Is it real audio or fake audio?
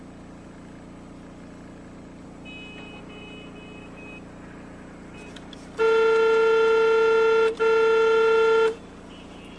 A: real